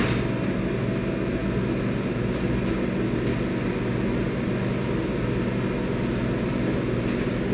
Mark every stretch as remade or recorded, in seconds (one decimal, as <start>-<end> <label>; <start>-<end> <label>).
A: 0.0-7.5 recorded